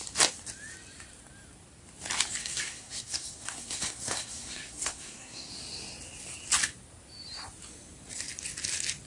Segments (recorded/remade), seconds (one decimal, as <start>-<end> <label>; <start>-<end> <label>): 0.0-2.4 recorded; 2.4-5.5 remade; 5.5-9.1 recorded